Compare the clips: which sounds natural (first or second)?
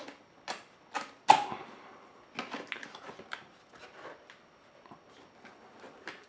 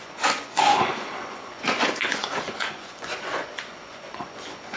first